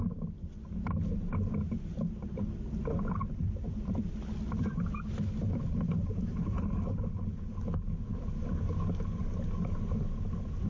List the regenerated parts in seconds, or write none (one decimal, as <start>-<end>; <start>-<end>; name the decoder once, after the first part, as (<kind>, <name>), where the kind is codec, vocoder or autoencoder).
none

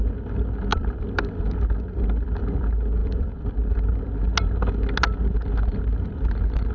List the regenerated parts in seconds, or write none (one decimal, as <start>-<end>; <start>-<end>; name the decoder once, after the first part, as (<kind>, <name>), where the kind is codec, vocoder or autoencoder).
0.7-2.5 (vocoder, BigVGAN v2); 3.0-4.0

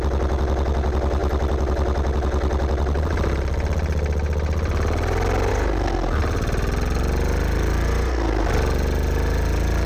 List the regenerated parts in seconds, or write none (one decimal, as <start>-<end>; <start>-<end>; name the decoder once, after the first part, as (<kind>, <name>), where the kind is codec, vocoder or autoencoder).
none

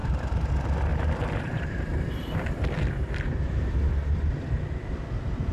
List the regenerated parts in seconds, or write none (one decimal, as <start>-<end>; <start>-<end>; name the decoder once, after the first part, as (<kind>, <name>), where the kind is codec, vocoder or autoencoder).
0.0-0.5 (vocoder, BigVGAN v2); 0.9-3.7

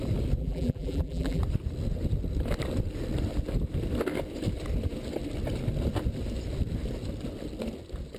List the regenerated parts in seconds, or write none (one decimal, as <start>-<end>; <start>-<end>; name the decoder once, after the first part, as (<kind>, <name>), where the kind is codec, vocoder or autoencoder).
0.4-1.4 (vocoder, BigVGAN v2)